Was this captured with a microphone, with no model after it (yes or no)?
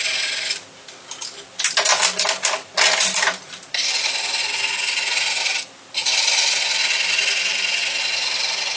yes